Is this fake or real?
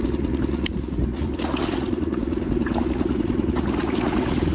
fake